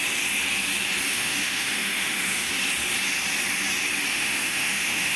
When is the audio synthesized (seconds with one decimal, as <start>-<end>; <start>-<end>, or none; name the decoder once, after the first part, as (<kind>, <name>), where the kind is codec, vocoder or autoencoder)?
1.1-2.5 (autoencoder, DAC-VAE); 4.1-5.2